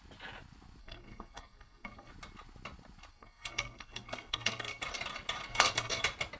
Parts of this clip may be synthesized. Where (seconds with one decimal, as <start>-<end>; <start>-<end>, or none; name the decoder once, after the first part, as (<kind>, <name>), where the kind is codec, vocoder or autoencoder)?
0.8-2.1 (codec, SNAC); 3.1-4.8; 5.5-6.0

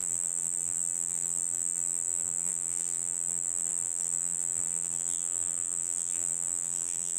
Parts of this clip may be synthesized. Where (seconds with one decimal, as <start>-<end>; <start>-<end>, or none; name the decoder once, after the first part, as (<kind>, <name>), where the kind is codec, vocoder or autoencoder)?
0.0-7.2 (vocoder, BigVGAN v2)

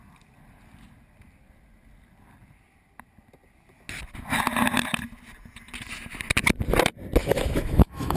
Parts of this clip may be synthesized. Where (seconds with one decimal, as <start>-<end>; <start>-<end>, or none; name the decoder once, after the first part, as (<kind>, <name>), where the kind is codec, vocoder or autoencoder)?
7.2-8.2 (autoencoder, DAC-VAE)

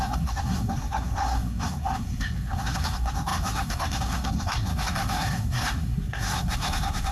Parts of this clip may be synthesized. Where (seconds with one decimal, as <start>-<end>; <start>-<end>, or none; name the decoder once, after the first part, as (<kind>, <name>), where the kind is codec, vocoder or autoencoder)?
0.0-7.1 (codec, SNAC)

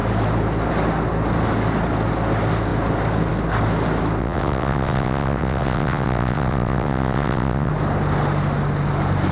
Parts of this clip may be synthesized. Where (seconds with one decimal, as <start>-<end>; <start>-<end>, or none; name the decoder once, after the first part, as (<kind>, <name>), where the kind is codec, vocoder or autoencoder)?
4.2-7.7 (vocoder, WaveNeXt)